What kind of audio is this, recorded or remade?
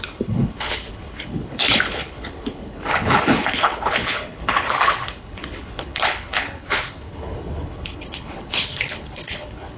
remade